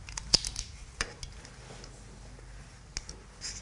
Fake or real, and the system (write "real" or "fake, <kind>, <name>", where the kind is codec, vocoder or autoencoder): real